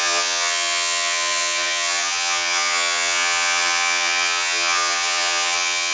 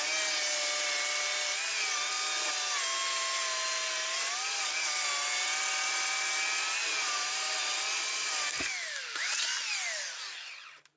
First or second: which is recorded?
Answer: second